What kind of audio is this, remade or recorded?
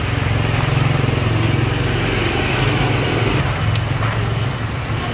recorded